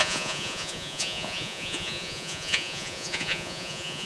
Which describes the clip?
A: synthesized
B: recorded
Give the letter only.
A